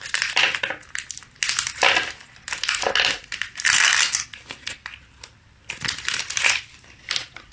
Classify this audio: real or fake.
real